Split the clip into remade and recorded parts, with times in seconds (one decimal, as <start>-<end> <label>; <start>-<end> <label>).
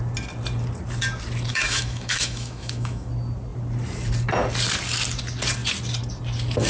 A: 0.0-1.5 recorded; 1.5-3.1 remade; 3.1-6.7 recorded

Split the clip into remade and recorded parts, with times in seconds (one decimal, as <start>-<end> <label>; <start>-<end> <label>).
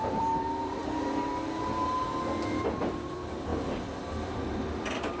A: 0.0-0.8 remade; 0.8-2.8 recorded; 2.8-3.5 remade; 3.5-4.1 recorded; 4.1-5.2 remade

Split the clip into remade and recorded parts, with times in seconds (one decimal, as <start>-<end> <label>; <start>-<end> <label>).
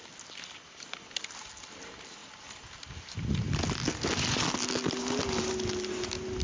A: 0.0-6.4 recorded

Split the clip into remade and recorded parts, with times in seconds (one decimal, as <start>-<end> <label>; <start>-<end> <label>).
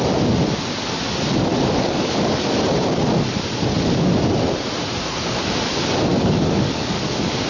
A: 0.0-1.5 recorded; 1.5-2.3 remade; 2.3-6.1 recorded; 6.1-7.1 remade; 7.1-7.5 recorded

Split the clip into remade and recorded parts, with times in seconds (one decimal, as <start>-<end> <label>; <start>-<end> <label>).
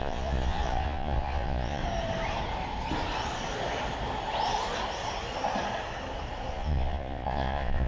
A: 0.0-1.8 remade; 1.8-6.5 recorded; 6.5-7.9 remade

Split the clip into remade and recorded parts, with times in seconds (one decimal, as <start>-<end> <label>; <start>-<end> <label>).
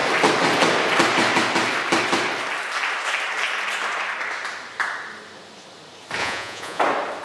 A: 0.0-6.2 recorded; 6.2-6.8 remade; 6.8-7.2 recorded